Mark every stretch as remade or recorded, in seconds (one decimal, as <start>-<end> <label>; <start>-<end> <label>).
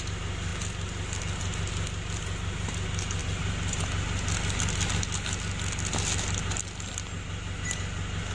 0.0-3.2 recorded; 3.2-3.9 remade; 3.9-8.3 recorded